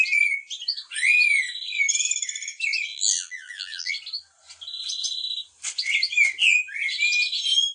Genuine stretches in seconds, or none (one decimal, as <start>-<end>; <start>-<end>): 0.0-2.9; 3.9-7.7